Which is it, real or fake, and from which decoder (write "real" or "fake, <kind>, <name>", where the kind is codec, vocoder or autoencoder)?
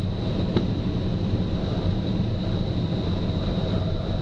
real